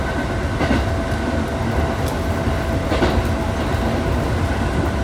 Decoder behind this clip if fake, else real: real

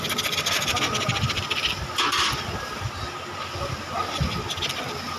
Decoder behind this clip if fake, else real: real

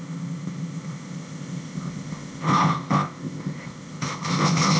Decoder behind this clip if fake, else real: fake, codec, ZipCodec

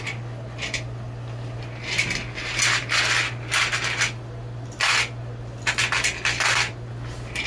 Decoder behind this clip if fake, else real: real